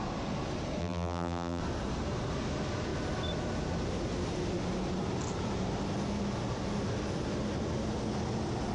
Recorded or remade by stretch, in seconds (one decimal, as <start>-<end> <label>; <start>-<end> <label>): 0.0-0.8 recorded; 0.8-1.6 remade; 1.6-8.7 recorded